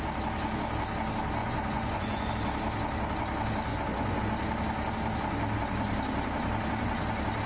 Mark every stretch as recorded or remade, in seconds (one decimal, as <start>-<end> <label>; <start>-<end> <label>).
0.0-1.4 recorded; 1.4-2.3 remade; 2.3-3.7 recorded; 3.7-4.2 remade; 4.2-7.5 recorded